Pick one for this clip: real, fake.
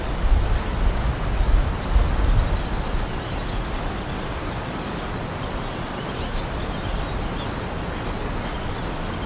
real